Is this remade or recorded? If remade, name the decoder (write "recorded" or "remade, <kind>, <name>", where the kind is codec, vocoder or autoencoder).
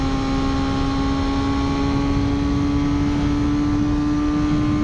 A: recorded